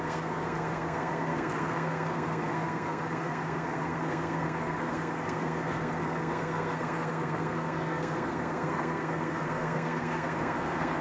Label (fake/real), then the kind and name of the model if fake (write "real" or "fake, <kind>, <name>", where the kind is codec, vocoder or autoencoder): fake, codec, SNAC